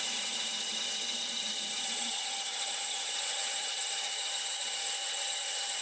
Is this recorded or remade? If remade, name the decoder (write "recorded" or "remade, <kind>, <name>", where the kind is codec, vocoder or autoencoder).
remade, vocoder, HiFi-GAN